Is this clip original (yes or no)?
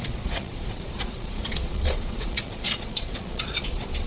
no